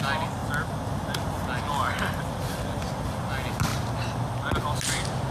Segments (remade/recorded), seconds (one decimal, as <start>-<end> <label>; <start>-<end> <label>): 0.0-5.3 recorded